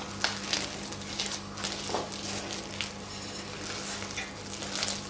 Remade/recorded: recorded